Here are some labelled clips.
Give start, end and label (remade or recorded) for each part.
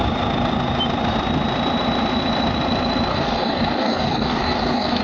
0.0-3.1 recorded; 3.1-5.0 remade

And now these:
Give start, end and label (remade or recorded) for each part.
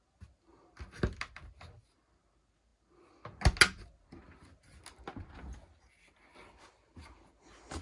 0.0-7.8 recorded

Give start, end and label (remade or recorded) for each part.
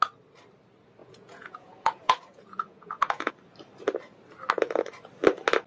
0.0-1.0 recorded; 1.0-3.3 remade; 3.3-5.7 recorded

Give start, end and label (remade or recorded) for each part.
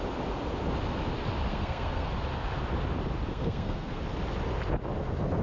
0.0-1.5 recorded; 1.5-2.1 remade; 2.1-3.3 recorded; 3.3-4.0 remade; 4.0-5.4 recorded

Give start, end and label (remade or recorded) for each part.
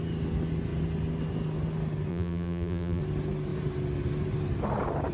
0.0-2.1 recorded; 2.1-3.0 remade; 3.0-5.1 recorded